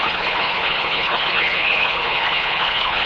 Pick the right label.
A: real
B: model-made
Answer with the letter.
B